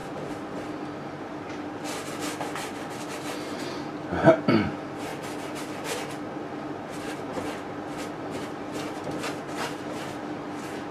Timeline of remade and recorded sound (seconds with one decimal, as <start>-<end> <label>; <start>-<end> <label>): 0.0-10.9 recorded